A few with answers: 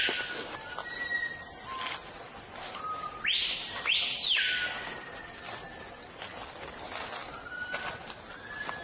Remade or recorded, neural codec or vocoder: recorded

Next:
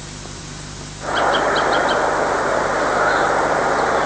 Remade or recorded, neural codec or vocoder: remade, vocoder, BigVGAN v2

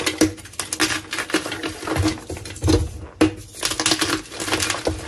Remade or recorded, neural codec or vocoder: recorded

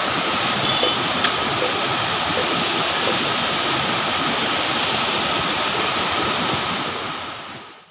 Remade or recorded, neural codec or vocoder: recorded